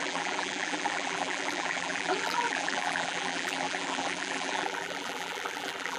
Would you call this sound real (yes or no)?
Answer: no